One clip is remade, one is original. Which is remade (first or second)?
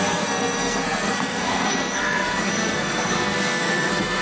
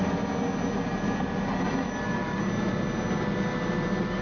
first